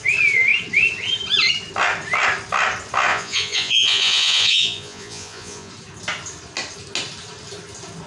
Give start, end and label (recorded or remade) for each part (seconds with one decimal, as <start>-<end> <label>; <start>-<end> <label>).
0.0-3.1 recorded; 3.1-5.7 remade; 5.7-8.1 recorded